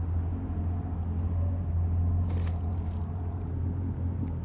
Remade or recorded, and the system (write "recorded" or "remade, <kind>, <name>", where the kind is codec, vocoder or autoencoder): recorded